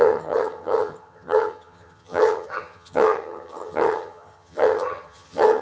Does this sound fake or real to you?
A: fake